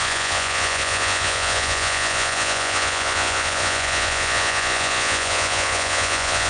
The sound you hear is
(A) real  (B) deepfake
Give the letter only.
B